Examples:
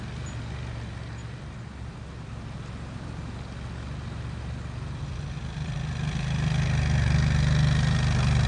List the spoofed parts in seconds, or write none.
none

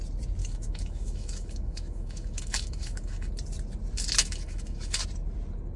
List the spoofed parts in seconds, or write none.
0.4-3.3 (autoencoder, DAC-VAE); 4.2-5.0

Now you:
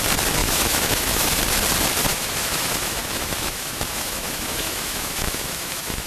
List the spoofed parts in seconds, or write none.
0.4-1.4 (autoencoder, DAC-VAE); 2.1-6.1

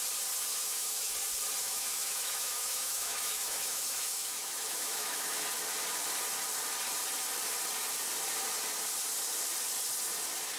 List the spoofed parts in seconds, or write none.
0.5-1.1 (autoencoder, DAC-VAE); 1.6-5.5

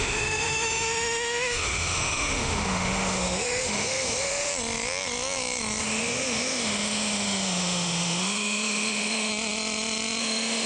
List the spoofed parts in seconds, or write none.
0.0-4.5 (autoencoder, DAC-VAE); 5.8-9.3; 10.2-10.7

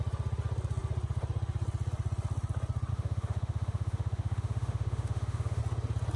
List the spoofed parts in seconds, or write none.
2.9-5.6 (autoencoder, DAC-VAE)